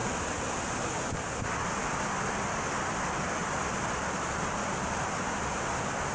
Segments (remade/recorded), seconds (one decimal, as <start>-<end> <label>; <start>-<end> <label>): 0.0-6.1 recorded